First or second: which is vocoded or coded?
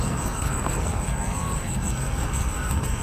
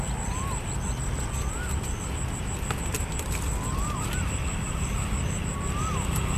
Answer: first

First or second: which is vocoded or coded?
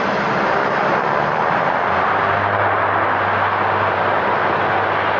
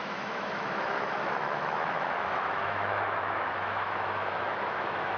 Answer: second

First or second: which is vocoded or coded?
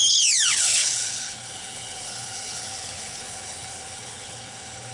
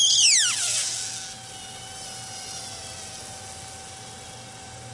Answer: first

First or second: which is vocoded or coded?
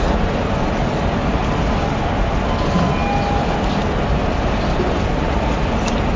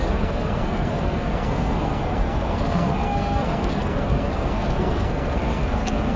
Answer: second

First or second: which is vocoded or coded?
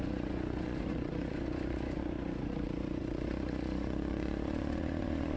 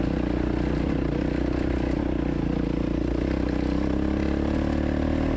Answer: first